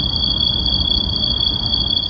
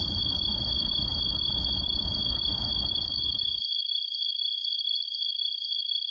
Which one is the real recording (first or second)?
first